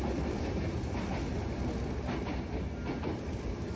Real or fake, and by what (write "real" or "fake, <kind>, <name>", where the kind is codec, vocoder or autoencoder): real